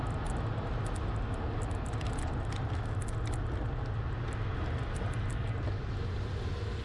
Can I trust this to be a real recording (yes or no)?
yes